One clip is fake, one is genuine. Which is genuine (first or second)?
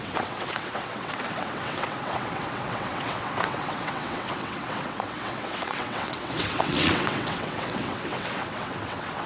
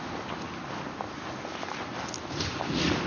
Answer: second